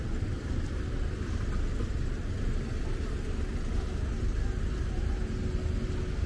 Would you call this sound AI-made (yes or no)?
no